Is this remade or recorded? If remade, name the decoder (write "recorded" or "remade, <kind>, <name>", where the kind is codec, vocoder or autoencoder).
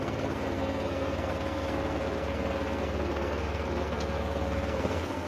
remade, codec, SNAC